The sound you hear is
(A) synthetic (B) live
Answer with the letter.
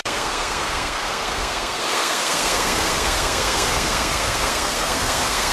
A